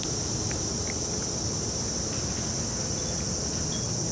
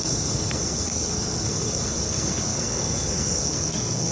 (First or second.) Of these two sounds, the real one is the first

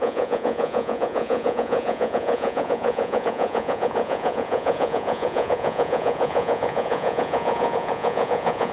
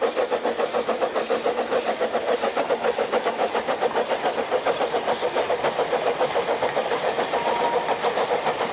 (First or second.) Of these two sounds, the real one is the second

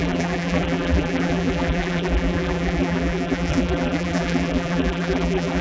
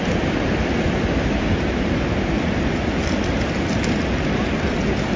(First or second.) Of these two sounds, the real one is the second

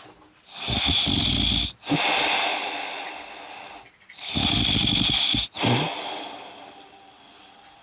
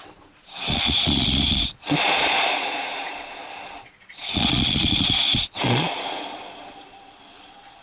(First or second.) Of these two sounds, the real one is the first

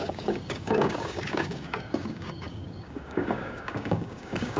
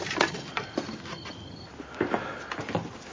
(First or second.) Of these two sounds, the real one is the second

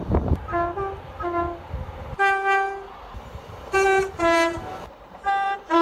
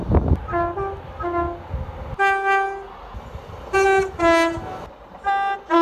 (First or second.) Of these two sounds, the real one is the second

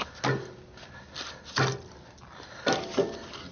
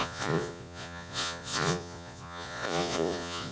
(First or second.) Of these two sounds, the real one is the first